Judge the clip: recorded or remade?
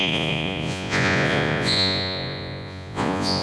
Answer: remade